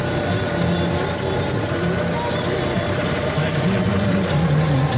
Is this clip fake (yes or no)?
no